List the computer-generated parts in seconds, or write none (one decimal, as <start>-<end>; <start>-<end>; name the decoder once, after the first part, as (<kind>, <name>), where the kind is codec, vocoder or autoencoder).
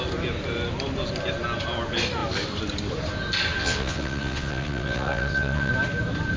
3.6-5.7 (vocoder, WaveNeXt)